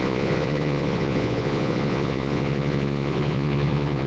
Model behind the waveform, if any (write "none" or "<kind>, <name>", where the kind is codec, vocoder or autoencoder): vocoder, Vocos